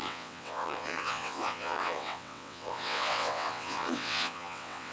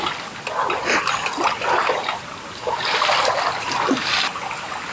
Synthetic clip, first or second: first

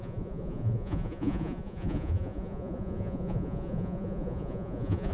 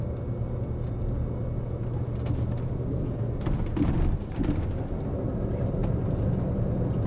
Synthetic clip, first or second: first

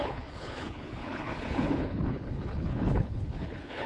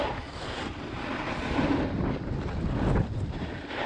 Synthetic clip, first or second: first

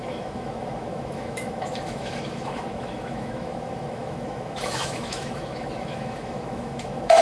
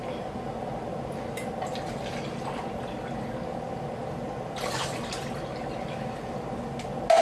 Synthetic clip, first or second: first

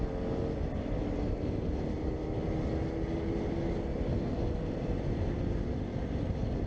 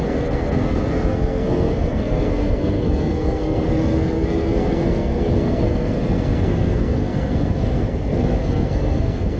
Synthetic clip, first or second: second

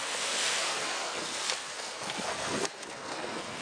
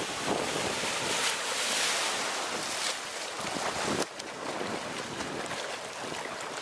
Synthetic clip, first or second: first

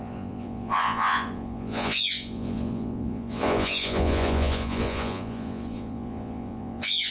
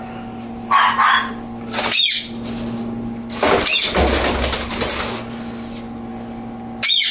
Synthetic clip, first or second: first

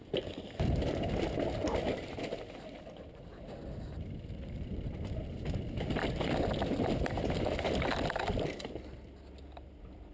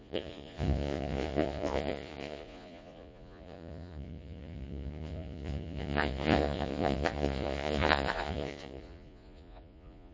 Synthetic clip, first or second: second